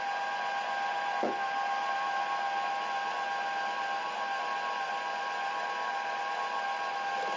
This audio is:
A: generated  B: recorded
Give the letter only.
B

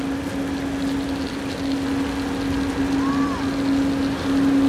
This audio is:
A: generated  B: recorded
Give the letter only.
B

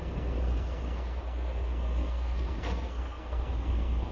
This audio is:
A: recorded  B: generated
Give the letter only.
B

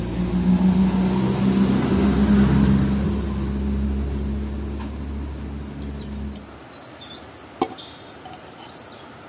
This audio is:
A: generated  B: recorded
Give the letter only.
B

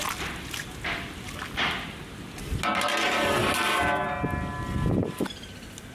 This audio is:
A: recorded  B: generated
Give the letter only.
A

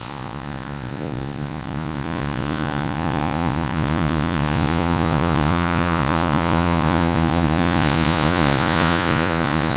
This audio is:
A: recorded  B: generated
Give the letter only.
B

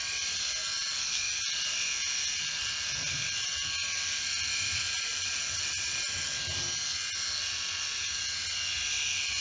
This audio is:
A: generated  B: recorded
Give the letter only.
B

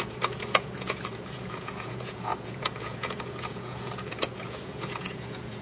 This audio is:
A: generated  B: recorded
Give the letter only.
A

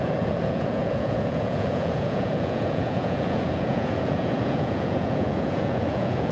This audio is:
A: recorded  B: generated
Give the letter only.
B